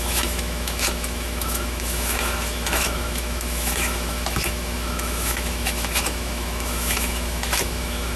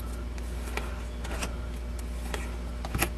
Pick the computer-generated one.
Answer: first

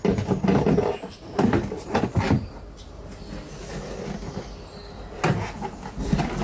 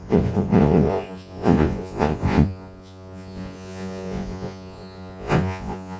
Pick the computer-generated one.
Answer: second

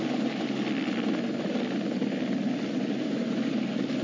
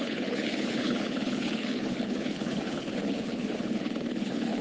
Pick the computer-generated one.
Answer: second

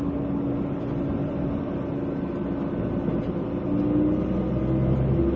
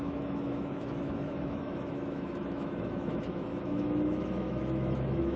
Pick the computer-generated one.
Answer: second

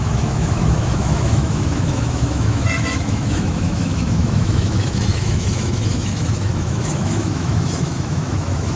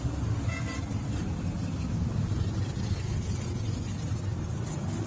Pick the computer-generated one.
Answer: first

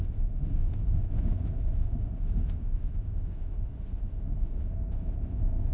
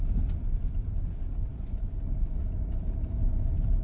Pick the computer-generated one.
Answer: first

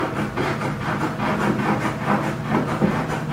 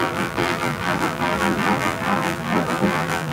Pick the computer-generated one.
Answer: second